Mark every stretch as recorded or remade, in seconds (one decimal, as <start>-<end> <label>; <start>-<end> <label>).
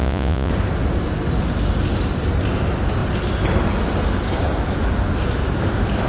0.0-0.5 remade; 0.5-6.1 recorded